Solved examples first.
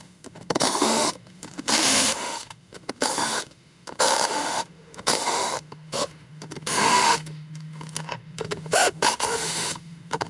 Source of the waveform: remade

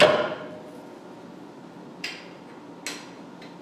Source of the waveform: recorded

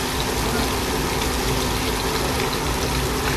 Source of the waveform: recorded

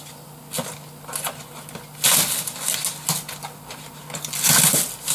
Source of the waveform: recorded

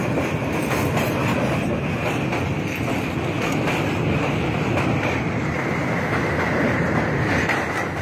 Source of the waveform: recorded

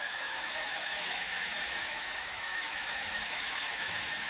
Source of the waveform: remade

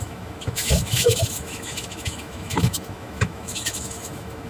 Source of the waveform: remade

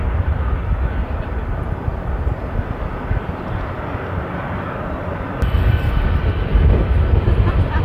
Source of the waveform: recorded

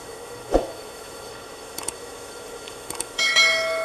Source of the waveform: remade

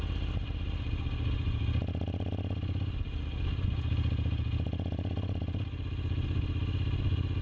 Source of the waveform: recorded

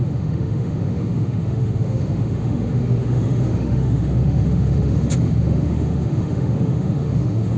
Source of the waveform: remade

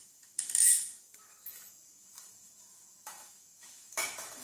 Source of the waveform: remade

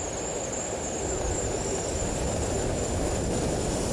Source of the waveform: recorded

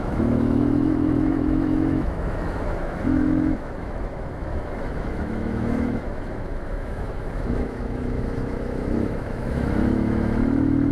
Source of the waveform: remade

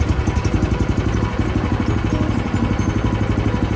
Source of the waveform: recorded